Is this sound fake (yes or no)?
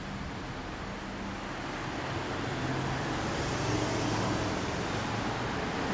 no